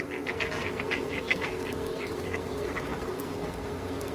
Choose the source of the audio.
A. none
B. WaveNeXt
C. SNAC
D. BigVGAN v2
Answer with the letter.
C